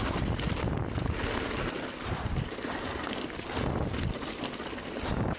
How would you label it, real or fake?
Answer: real